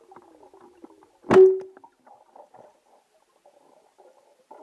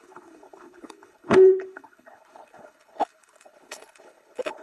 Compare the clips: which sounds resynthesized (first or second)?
second